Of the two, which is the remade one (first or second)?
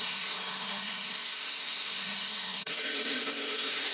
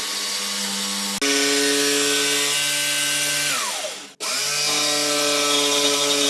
first